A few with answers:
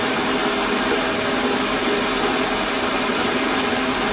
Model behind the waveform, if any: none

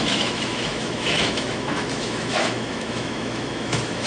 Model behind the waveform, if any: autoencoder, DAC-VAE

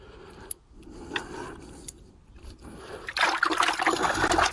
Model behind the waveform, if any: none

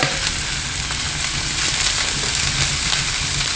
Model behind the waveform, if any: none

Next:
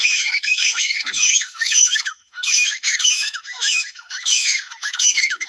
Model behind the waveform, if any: autoencoder, DAC-VAE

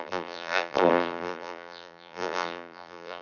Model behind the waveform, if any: vocoder, BigVGAN v2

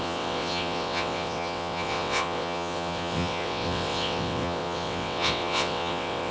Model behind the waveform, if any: vocoder, WaveNeXt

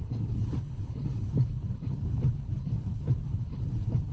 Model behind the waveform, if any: codec, HILCodec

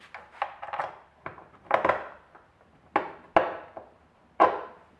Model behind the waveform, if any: none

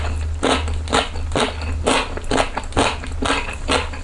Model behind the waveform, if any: none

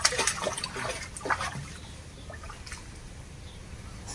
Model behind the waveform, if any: none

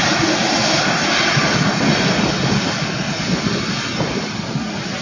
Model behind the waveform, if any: none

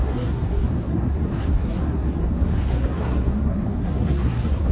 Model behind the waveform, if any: codec, SNAC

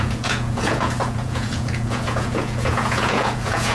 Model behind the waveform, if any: vocoder, Vocos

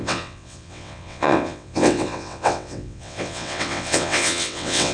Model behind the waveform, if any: vocoder, WaveNeXt